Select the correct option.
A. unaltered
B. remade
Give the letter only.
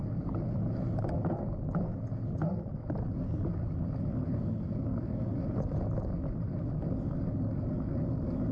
A